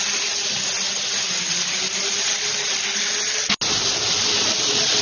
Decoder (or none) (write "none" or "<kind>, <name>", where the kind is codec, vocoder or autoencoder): none